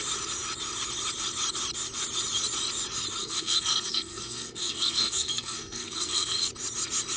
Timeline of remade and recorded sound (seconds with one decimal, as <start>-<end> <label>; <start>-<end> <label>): 0.0-3.2 recorded; 3.2-6.5 remade; 6.5-7.2 recorded